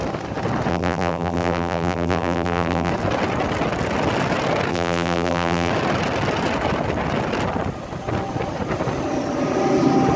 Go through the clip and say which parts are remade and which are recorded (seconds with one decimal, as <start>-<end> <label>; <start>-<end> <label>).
0.0-0.7 recorded; 0.7-2.9 remade; 2.9-4.7 recorded; 4.7-5.7 remade; 5.7-10.2 recorded